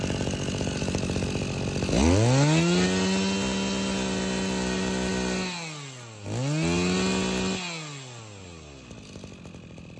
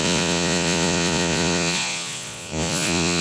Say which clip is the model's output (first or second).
second